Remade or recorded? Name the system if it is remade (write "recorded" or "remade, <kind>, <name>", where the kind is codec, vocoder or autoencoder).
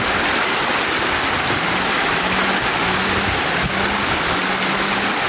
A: recorded